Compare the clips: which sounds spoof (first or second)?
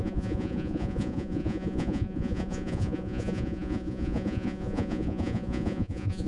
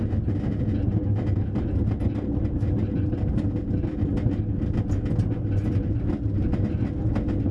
first